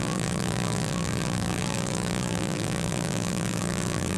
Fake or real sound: fake